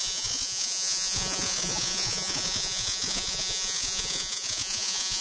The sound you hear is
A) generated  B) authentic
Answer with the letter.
A